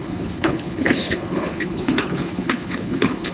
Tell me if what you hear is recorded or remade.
remade